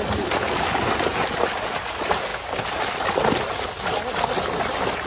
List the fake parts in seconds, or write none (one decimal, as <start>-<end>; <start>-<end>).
none